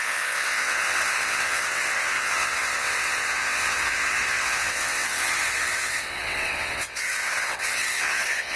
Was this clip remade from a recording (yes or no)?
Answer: yes